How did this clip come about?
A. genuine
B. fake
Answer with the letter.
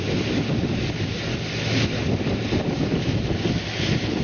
A